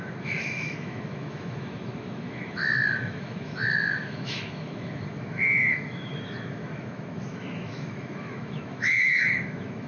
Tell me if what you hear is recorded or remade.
remade